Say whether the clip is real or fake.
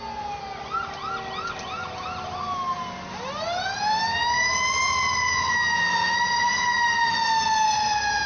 real